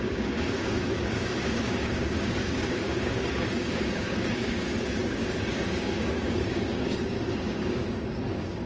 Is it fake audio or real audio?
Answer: fake